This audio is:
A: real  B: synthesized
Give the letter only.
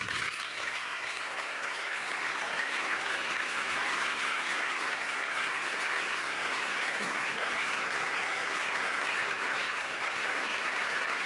B